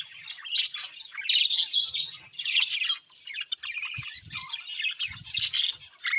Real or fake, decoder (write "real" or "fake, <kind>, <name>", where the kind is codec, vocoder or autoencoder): real